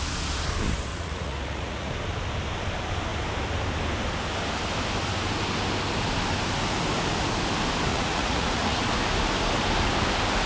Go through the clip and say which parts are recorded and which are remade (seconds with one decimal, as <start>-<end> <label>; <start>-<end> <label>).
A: 0.0-0.9 recorded; 0.9-1.9 remade; 1.9-7.9 recorded; 7.9-8.8 remade; 8.8-10.5 recorded